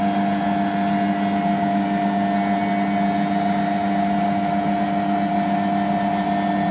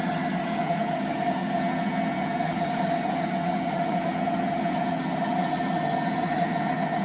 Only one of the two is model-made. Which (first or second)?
second